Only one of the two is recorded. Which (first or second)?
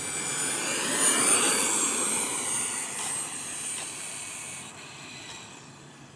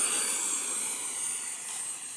first